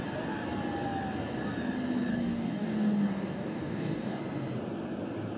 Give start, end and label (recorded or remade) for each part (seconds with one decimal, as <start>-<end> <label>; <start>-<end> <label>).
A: 0.0-2.1 recorded; 2.1-4.2 remade; 4.2-5.4 recorded